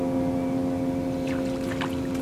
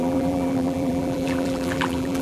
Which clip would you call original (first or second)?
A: first